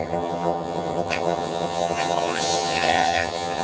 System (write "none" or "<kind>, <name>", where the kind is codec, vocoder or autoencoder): vocoder, HiFi-GAN